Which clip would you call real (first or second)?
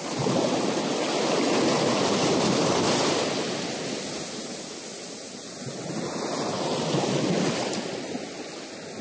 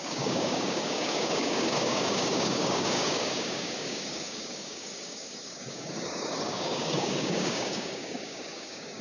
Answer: first